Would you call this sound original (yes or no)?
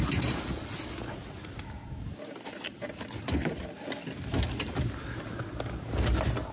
yes